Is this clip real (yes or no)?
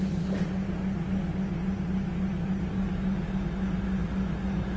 yes